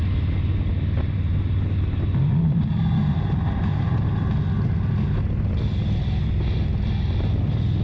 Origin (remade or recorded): recorded